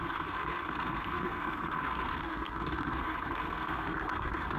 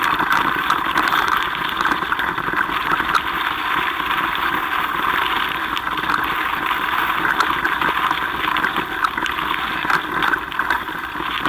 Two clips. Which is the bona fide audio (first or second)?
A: second